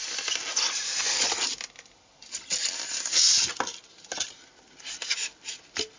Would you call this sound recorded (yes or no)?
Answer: yes